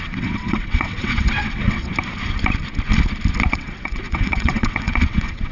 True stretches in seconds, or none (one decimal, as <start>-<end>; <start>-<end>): 1.9-3.5